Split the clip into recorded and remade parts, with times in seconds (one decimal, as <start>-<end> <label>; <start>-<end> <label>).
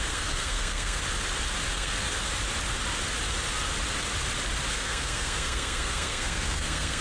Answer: 0.0-1.0 remade; 1.0-1.7 recorded; 1.7-2.1 remade; 2.1-4.7 recorded; 4.7-7.0 remade